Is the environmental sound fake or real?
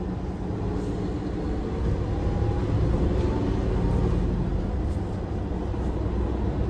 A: real